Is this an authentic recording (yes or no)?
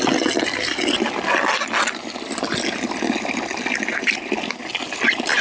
yes